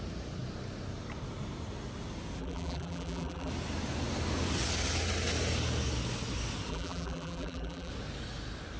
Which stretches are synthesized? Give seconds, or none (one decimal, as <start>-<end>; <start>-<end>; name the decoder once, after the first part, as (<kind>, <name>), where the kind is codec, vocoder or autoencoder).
2.4-3.5 (vocoder, BigVGAN v2); 6.7-7.9